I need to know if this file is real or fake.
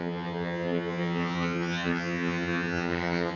fake